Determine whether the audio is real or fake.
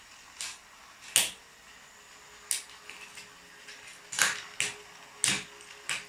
real